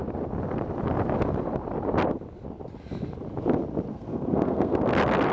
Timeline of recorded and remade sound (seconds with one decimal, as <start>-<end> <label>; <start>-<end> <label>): 0.0-3.9 recorded; 3.9-4.7 remade; 4.7-5.3 recorded